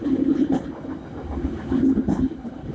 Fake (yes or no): no